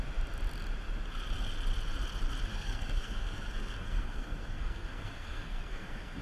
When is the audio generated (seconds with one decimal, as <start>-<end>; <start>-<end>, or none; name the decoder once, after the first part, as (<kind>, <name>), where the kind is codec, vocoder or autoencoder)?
2.5-6.2 (codec, SNAC)